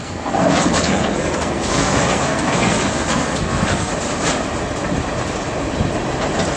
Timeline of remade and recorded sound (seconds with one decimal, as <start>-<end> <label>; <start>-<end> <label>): 0.0-3.9 remade; 3.9-6.6 recorded